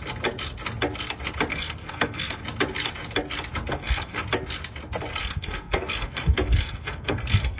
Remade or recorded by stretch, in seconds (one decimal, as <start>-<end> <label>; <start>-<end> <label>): 0.0-1.5 recorded; 1.5-2.4 remade; 2.4-3.7 recorded; 3.7-4.2 remade; 4.2-5.2 recorded; 5.2-7.6 remade